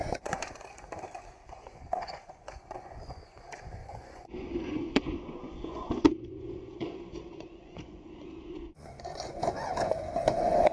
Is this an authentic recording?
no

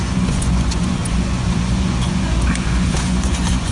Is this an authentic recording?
no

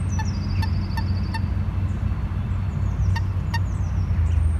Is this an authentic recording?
yes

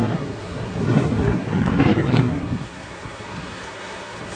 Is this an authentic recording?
no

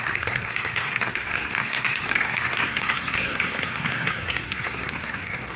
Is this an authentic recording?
no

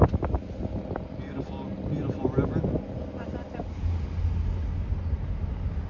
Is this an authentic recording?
yes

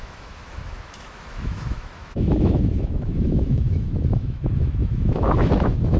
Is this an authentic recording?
no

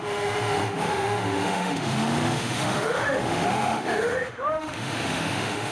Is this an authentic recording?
no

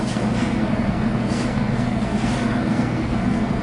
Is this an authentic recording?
no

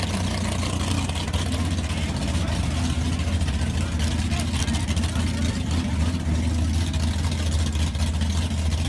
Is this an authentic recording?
yes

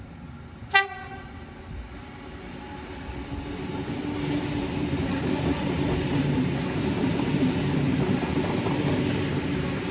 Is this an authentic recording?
yes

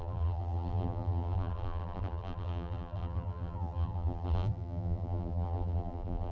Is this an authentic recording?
no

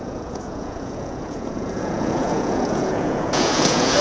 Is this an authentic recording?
no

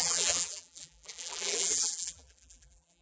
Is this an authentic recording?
no